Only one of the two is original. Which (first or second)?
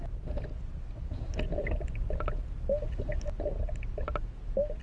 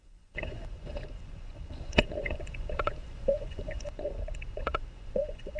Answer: first